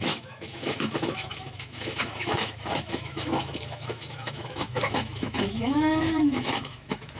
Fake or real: fake